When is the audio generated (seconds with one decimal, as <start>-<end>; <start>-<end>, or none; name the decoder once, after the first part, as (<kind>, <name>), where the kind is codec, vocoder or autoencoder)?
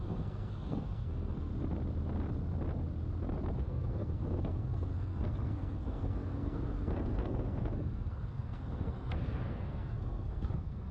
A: 0.0-1.5 (codec, SNAC); 3.6-10.9